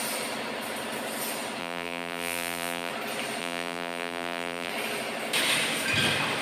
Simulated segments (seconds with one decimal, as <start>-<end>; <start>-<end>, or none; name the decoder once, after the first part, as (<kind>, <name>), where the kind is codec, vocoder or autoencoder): 1.6-2.9 (vocoder, BigVGAN v2); 3.4-4.7